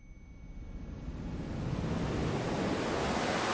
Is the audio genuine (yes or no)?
yes